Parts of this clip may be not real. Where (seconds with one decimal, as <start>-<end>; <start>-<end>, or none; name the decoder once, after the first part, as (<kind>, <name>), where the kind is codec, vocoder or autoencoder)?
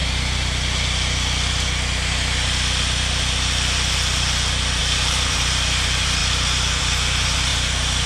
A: 4.8-8.1 (vocoder, BigVGAN v2)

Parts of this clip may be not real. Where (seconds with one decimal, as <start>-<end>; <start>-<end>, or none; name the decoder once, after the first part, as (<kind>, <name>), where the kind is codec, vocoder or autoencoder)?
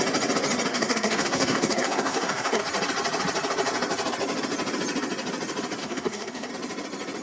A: 0.7-2.6 (codec, SNAC); 5.8-6.5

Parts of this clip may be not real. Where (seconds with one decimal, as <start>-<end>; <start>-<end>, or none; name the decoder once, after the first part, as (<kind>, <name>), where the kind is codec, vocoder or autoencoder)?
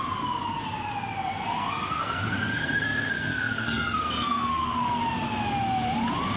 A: 1.2-5.0 (codec, SNAC)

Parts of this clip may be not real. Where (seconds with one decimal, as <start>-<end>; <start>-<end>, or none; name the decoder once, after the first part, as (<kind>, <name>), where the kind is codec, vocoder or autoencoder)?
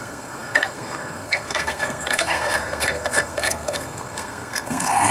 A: 0.0-5.1 (codec, SNAC)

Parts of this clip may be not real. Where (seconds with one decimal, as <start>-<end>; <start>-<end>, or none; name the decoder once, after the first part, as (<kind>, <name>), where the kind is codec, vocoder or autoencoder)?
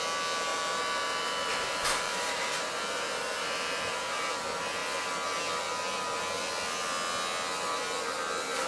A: 0.5-4.3 (vocoder, BigVGAN v2)